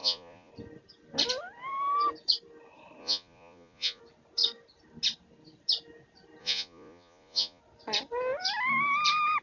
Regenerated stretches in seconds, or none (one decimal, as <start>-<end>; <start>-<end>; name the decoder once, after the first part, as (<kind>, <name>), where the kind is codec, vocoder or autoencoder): 0.0-0.5 (vocoder, Vocos); 3.0-4.0; 6.4-7.6